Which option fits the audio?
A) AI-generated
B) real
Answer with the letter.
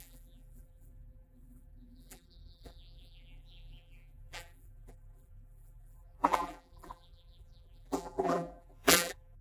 A